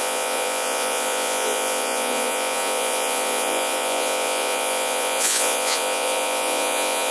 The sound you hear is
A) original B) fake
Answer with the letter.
B